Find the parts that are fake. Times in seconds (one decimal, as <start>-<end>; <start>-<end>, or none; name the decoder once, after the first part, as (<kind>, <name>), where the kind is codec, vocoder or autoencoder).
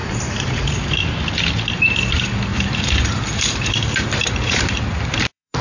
0.0-1.2 (vocoder, BigVGAN v2); 2.5-5.6